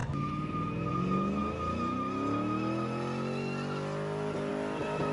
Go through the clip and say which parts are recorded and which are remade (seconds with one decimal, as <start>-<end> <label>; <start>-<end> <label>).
0.0-5.1 recorded